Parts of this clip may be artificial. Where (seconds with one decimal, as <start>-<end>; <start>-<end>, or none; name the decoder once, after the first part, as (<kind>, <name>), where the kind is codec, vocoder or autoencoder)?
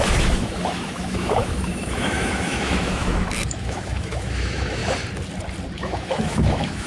0.0-4.8 (autoencoder, DAC-VAE); 5.8-6.9